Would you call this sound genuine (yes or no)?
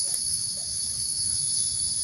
no